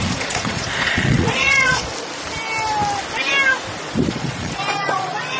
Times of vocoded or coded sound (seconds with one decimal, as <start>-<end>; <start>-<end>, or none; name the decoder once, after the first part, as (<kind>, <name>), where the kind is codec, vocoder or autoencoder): 0.0-1.9 (vocoder, Vocos); 4.1-5.4